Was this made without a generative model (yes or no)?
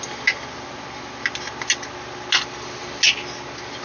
yes